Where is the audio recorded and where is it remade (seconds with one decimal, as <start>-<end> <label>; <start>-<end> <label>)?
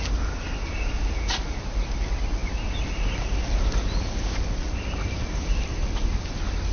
0.0-6.7 recorded